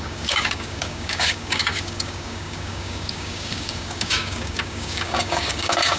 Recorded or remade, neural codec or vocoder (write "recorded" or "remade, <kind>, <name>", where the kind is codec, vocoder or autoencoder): remade, codec, DAC